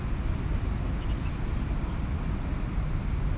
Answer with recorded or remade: recorded